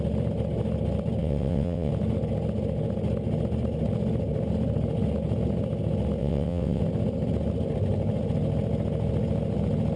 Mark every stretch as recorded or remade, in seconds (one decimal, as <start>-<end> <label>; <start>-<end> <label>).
0.0-1.2 recorded; 1.2-1.9 remade; 1.9-6.2 recorded; 6.2-6.8 remade; 6.8-10.0 recorded